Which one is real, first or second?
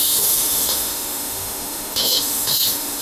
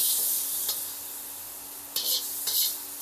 second